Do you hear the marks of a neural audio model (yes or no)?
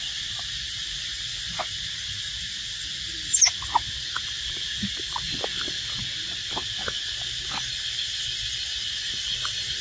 no